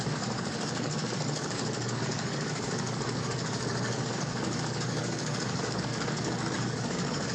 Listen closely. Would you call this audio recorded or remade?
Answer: remade